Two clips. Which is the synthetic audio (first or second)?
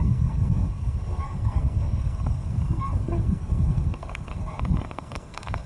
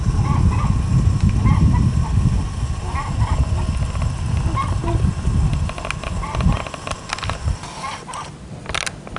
first